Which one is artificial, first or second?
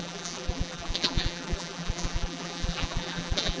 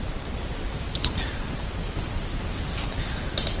first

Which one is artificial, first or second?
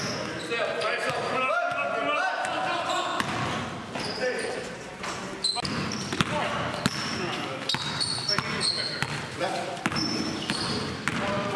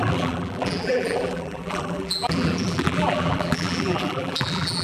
second